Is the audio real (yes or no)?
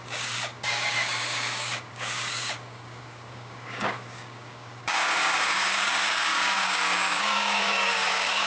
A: no